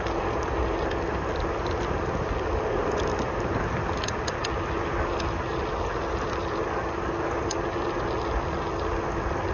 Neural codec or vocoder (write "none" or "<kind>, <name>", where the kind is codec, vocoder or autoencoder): none